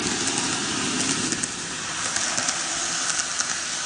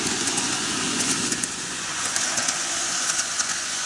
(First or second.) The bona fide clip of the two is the first